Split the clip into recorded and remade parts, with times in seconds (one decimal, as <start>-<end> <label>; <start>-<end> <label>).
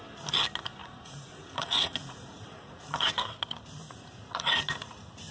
0.0-0.8 recorded; 0.8-3.1 remade; 3.1-3.8 recorded; 3.8-4.6 remade; 4.6-5.3 recorded